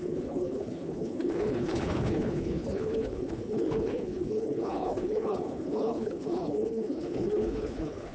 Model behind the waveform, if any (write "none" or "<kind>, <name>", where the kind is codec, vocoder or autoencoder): codec, HILCodec